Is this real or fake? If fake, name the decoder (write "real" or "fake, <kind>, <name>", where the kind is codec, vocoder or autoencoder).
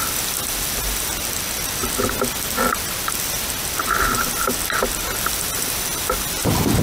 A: real